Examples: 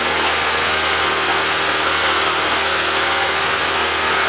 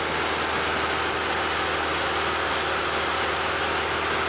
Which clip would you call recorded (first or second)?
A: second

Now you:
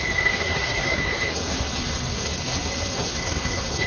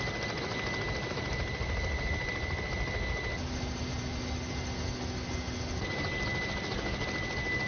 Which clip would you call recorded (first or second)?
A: second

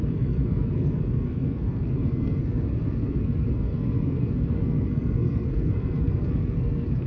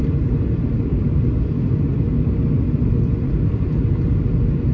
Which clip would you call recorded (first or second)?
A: second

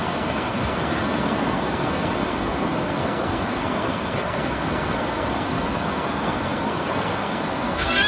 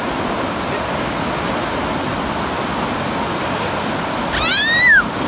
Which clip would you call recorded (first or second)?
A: second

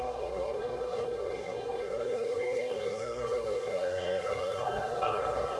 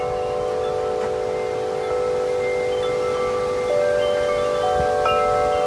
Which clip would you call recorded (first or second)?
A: second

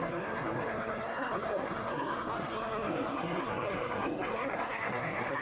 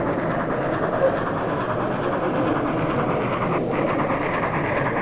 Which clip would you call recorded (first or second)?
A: second